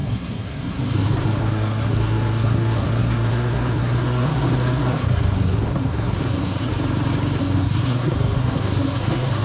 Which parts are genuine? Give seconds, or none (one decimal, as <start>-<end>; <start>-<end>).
6.7-7.4